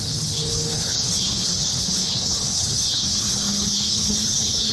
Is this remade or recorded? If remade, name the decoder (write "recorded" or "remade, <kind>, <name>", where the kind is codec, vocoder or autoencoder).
remade, codec, HILCodec